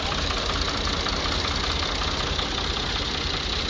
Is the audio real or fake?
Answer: real